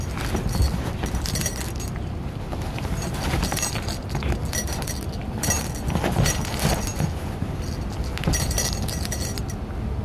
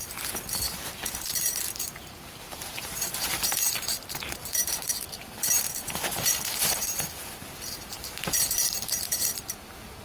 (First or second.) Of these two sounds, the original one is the first